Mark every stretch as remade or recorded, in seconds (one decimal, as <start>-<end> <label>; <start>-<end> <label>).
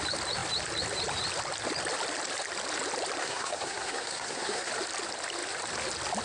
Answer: 0.0-3.2 recorded; 3.2-4.7 remade; 4.7-6.2 recorded